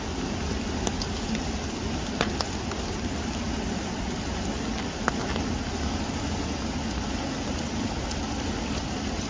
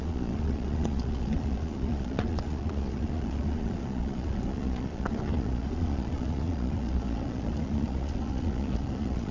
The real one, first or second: first